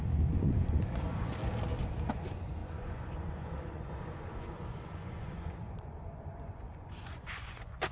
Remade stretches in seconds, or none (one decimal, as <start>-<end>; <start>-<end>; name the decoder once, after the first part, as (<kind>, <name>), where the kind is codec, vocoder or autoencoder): 0.0-1.4 (vocoder, Vocos); 2.1-7.9